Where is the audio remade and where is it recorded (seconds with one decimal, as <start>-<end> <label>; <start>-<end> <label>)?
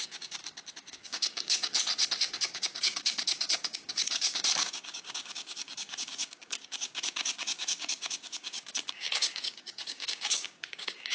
0.0-0.4 remade; 0.4-0.9 recorded; 0.9-1.7 remade; 1.7-2.3 recorded; 2.3-11.1 remade